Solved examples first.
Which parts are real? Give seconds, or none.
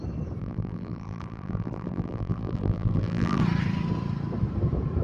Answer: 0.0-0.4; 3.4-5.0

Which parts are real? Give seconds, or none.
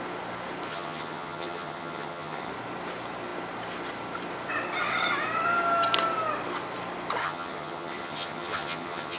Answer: 0.0-0.7; 2.5-7.2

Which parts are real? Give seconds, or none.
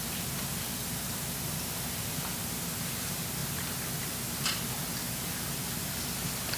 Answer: none